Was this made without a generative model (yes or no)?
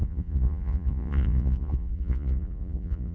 no